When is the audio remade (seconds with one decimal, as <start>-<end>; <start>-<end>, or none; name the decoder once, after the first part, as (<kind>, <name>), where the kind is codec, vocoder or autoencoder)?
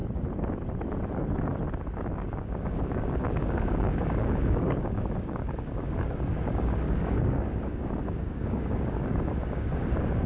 2.2-10.3 (codec, DAC)